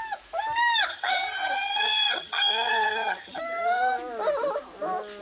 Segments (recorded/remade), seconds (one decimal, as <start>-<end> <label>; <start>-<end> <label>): 0.0-0.9 recorded; 0.9-3.4 remade; 3.4-5.2 recorded